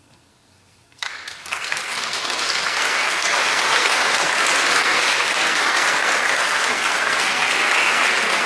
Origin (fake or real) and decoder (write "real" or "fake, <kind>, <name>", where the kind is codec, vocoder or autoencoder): fake, codec, SNAC